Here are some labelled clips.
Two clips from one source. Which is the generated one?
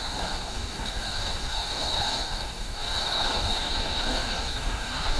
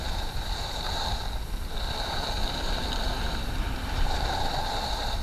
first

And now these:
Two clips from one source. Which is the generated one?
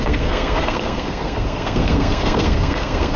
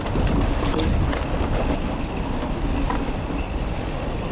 first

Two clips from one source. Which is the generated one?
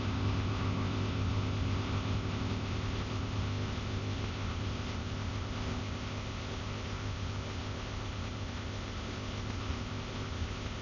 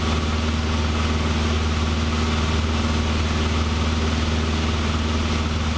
first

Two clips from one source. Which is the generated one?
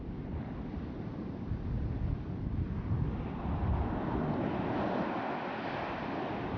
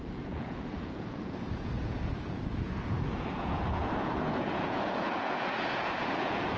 second